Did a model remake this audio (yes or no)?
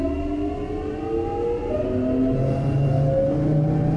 no